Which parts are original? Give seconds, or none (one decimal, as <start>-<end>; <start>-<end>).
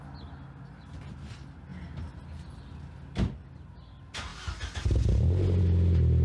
0.0-6.2